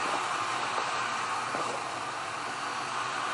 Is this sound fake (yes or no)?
no